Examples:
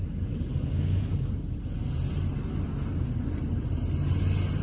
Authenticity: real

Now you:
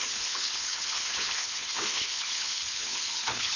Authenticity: fake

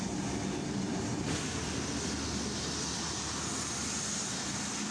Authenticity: real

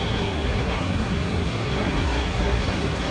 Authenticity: fake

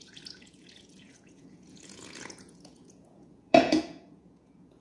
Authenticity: fake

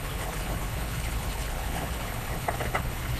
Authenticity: fake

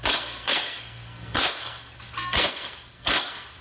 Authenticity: fake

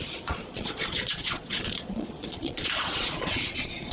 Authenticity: fake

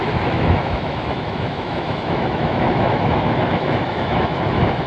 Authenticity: fake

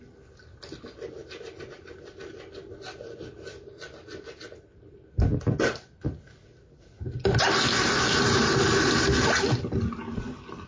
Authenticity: real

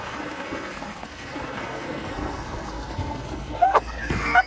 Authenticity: fake